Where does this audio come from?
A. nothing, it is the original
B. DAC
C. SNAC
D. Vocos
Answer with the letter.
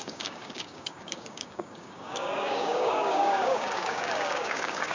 B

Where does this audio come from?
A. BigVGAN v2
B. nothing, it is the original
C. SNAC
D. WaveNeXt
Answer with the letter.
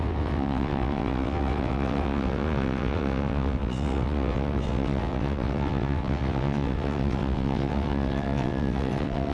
D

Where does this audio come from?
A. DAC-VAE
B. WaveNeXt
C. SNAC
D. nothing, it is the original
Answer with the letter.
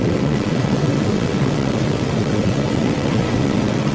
B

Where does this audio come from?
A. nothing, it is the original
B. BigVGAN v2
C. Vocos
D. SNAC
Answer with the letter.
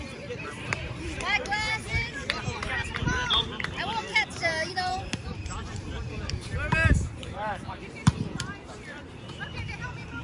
B